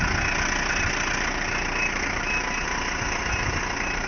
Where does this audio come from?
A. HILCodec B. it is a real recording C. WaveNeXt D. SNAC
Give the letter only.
B